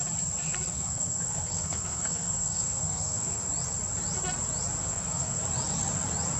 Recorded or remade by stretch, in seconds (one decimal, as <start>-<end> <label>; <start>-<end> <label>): 0.0-0.7 recorded; 0.7-3.5 remade; 3.5-4.8 recorded; 4.8-5.4 remade; 5.4-6.4 recorded